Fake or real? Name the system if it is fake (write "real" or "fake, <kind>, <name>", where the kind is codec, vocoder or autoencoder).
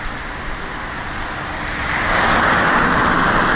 real